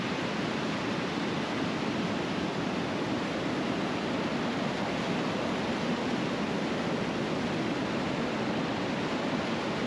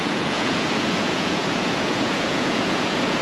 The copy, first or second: second